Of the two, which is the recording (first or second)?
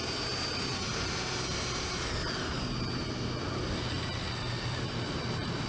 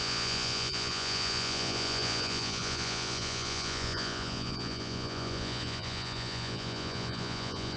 first